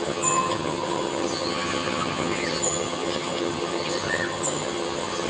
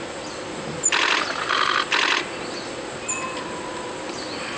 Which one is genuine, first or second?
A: second